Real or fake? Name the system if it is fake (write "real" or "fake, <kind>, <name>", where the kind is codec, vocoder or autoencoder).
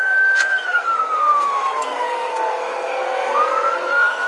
fake, codec, SNAC